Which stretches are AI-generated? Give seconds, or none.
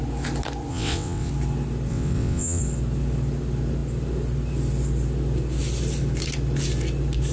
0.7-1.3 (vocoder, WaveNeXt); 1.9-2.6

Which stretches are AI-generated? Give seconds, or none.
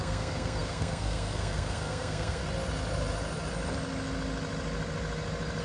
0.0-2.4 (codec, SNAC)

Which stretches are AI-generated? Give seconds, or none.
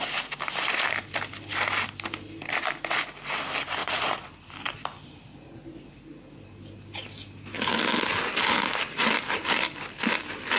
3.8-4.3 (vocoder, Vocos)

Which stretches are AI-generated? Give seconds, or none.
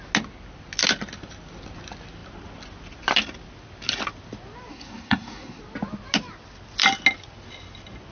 4.7-5.6 (codec, SNAC)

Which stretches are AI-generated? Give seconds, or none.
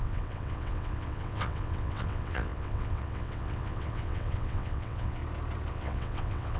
0.0-5.2 (vocoder, WaveNeXt); 5.7-6.6